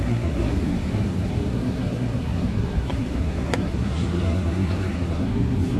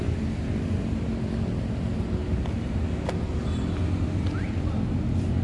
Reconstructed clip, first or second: first